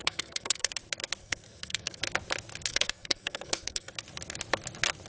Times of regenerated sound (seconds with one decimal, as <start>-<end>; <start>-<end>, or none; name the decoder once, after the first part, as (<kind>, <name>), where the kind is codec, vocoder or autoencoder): 0.0-0.7 (codec, SNAC); 1.2-2.0; 2.7-3.9